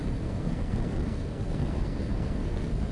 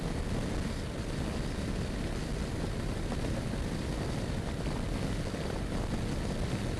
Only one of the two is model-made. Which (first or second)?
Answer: first